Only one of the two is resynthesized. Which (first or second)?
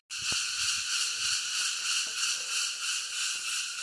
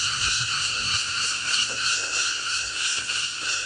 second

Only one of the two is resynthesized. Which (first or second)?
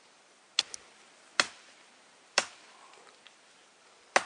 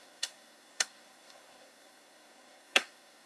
second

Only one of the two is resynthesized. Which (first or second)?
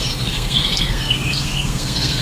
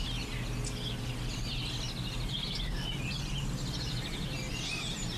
first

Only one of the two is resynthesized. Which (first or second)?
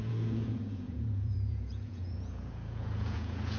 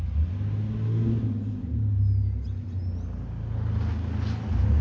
first